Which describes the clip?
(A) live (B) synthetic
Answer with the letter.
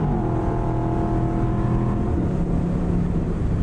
A